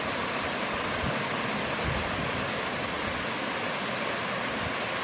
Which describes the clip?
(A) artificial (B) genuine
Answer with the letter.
B